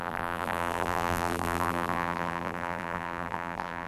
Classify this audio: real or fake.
fake